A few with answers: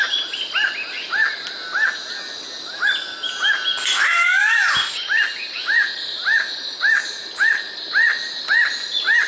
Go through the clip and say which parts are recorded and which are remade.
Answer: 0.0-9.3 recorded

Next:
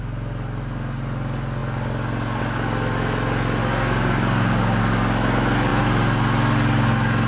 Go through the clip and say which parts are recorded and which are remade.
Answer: 0.0-3.6 recorded; 3.6-4.8 remade; 4.8-7.3 recorded

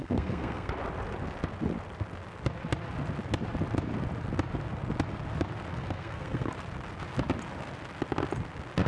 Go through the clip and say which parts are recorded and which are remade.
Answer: 0.0-0.7 remade; 0.7-5.7 recorded; 5.7-6.5 remade; 6.5-8.9 recorded